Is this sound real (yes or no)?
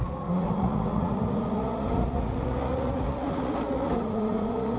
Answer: no